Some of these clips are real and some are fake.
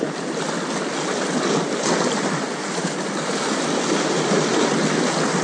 real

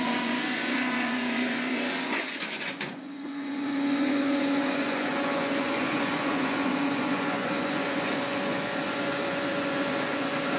fake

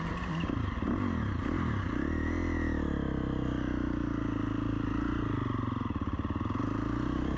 real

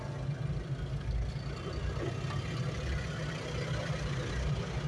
real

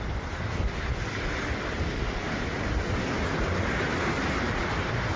real